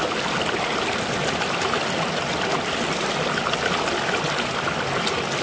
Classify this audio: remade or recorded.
recorded